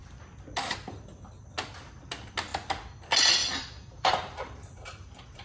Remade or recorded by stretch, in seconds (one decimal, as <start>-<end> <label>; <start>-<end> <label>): 0.0-3.4 recorded; 3.4-4.1 remade; 4.1-5.4 recorded